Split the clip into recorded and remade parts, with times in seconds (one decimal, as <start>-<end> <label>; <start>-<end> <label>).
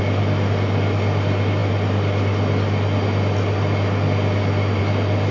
0.0-5.3 recorded